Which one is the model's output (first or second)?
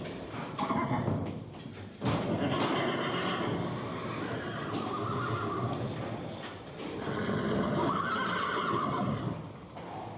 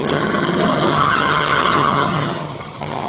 second